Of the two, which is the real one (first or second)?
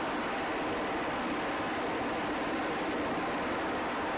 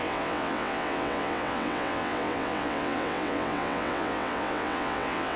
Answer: first